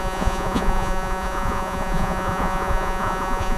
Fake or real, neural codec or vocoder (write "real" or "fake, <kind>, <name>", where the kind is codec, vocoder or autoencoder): fake, vocoder, Vocos